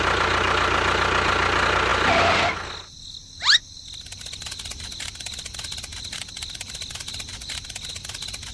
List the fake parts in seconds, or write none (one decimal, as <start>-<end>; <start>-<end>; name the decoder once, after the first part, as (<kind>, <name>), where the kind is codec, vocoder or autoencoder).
none